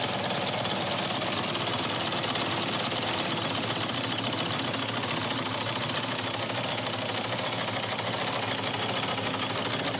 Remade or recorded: recorded